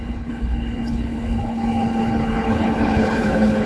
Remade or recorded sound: remade